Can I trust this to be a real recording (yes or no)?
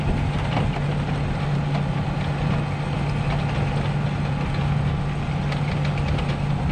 yes